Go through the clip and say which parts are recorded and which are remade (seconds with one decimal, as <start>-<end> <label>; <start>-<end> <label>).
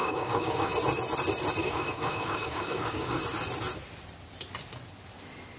0.0-0.7 remade; 0.7-1.6 recorded; 1.6-3.2 remade; 3.2-5.6 recorded